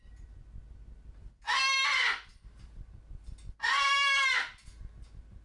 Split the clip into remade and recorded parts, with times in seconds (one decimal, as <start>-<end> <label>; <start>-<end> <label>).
0.0-5.4 recorded